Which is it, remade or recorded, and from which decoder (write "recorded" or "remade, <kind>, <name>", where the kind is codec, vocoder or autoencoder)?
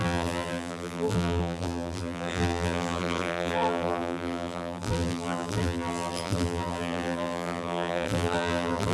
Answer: remade, vocoder, BigVGAN v2